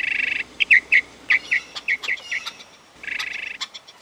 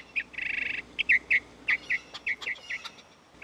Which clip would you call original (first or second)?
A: second